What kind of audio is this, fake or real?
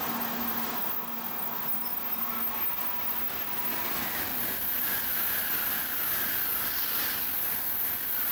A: real